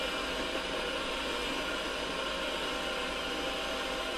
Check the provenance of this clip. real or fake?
real